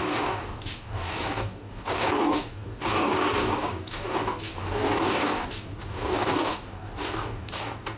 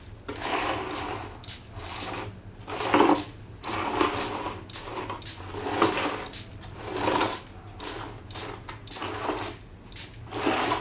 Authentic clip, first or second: second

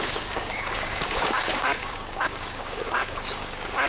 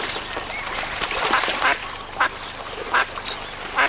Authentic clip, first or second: second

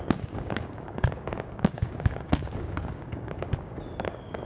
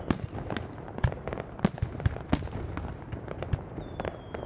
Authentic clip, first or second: second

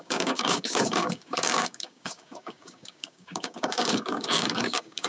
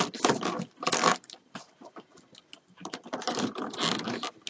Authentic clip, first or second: second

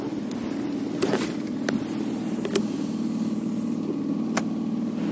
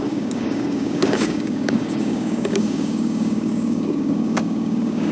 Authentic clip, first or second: first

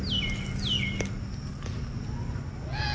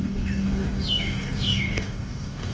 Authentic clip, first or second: first